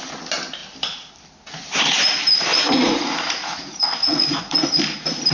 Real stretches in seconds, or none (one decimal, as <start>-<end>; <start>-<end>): 0.0-2.5; 4.8-5.3